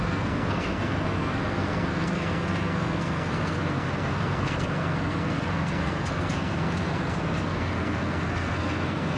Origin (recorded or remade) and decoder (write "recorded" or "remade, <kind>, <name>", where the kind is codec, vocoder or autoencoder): remade, codec, SNAC